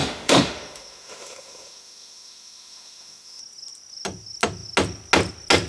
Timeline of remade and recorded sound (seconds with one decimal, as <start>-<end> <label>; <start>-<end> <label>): 0.0-3.4 remade; 3.4-5.7 recorded